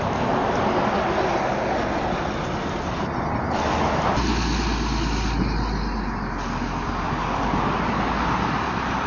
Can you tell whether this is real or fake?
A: real